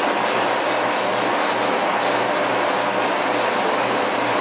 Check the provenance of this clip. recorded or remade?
recorded